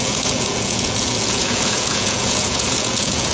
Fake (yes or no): yes